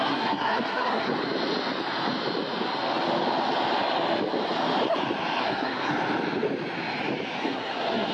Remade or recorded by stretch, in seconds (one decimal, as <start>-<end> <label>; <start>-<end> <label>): 0.0-1.1 remade; 1.1-5.4 recorded; 5.4-5.9 remade; 5.9-7.4 recorded; 7.4-8.1 remade

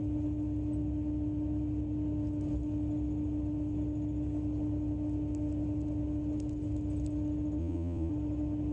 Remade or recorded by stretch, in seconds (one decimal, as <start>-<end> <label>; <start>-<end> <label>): 0.0-7.6 recorded; 7.6-8.1 remade; 8.1-8.7 recorded

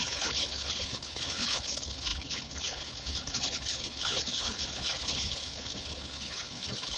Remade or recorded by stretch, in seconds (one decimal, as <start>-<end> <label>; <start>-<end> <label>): 0.0-7.0 remade

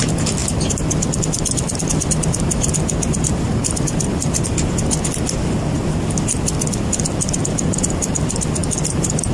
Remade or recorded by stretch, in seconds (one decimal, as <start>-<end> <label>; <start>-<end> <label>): 0.0-0.4 recorded; 0.4-4.7 remade; 4.7-8.6 recorded; 8.6-9.3 remade

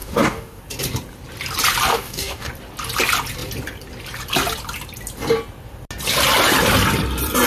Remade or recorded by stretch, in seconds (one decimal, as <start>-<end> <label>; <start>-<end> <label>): 0.0-0.6 remade; 0.6-1.9 recorded; 1.9-2.5 remade; 2.5-7.5 recorded